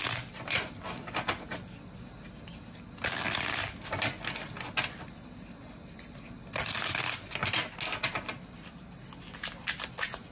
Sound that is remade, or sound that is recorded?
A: recorded